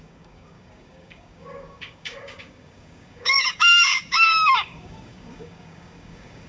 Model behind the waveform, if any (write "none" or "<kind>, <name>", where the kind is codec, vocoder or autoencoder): codec, DAC